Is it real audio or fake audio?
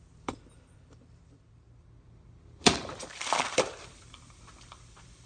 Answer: fake